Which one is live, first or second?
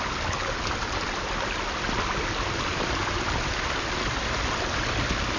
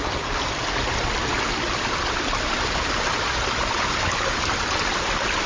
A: first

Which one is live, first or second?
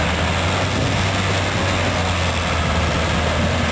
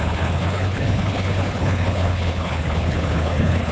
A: first